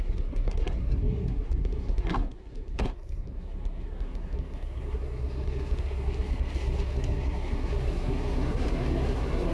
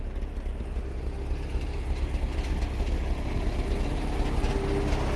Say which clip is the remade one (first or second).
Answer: first